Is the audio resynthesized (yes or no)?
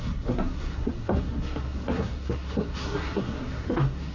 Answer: yes